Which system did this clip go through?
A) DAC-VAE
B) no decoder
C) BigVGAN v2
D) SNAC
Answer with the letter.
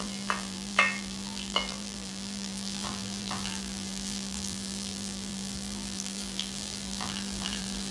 C